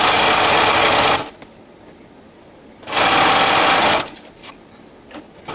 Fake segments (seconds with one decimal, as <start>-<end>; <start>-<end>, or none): none